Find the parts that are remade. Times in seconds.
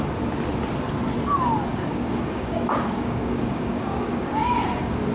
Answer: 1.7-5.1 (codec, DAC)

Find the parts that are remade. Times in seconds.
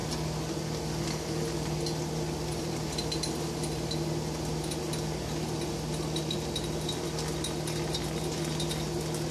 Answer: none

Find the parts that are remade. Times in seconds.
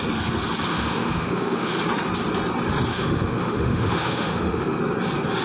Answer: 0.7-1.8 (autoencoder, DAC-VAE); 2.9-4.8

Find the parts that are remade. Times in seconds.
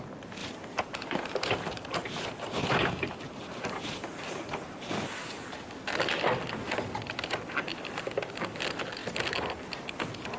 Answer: 0.4-5.1 (vocoder, BigVGAN v2); 7.7-8.3